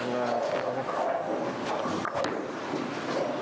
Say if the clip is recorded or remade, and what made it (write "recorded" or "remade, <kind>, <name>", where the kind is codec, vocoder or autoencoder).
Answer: recorded